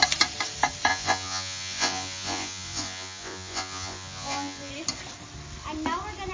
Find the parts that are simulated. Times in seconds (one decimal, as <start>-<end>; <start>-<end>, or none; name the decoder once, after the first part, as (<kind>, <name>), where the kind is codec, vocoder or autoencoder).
0.9-4.7 (vocoder, Vocos)